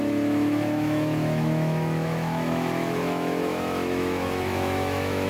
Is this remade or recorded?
remade